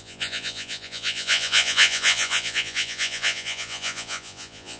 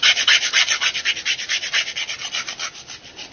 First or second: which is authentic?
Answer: second